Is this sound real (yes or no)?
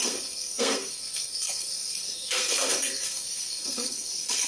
no